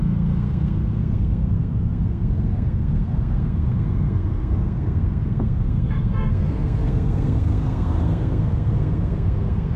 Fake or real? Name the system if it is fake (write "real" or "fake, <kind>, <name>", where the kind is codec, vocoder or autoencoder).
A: fake, codec, SNAC